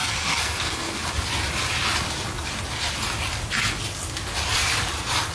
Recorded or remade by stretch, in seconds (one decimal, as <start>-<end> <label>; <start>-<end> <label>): 0.0-1.0 remade; 1.0-5.3 recorded